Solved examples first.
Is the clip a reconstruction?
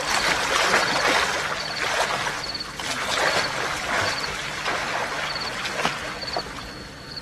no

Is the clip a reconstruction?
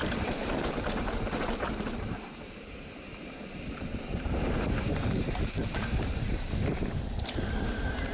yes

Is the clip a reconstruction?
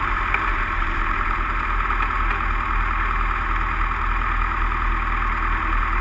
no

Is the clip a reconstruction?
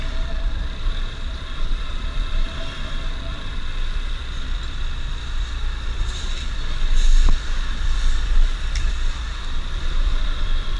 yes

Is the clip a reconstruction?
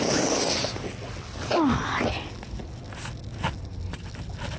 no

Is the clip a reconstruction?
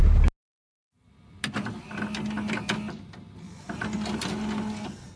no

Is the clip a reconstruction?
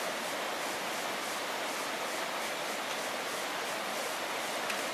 no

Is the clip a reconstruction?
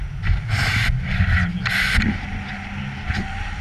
no